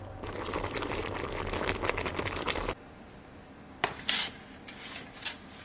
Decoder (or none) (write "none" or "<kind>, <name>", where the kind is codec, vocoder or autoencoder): vocoder, BigVGAN v2